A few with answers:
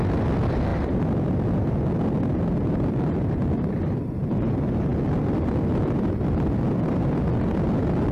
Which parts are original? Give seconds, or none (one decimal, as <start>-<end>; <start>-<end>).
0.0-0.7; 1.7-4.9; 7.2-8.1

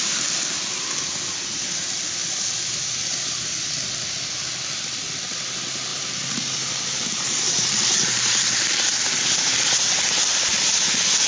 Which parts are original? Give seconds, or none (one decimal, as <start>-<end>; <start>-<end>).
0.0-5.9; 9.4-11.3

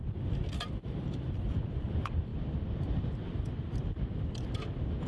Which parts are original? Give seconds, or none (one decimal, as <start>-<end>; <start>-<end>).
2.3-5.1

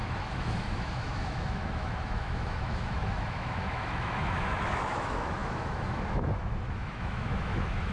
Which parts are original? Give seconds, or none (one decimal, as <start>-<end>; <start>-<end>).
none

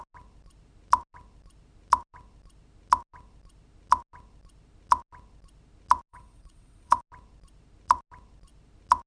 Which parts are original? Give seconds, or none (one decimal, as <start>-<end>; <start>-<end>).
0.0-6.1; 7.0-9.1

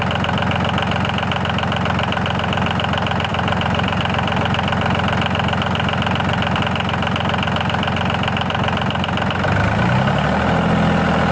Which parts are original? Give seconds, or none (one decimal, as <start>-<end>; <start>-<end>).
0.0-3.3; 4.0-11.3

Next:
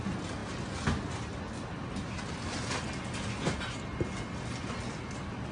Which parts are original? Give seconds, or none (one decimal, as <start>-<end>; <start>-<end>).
0.0-5.5